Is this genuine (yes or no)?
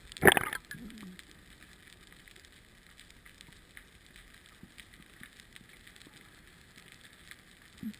yes